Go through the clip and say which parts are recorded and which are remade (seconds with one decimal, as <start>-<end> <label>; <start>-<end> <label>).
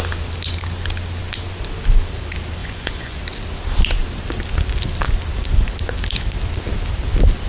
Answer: 0.0-2.6 recorded; 2.6-3.2 remade; 3.2-7.5 recorded